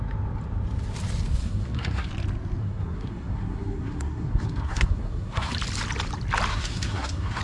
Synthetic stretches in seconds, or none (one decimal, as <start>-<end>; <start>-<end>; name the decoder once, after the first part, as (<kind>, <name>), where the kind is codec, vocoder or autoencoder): 1.4-2.1 (codec, SNAC); 2.6-5.5; 6.5-7.4